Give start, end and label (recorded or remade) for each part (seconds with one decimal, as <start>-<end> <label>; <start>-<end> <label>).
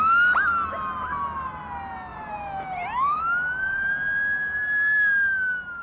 0.0-2.1 recorded; 2.1-3.2 remade; 3.2-5.8 recorded